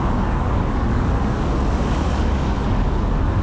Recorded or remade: remade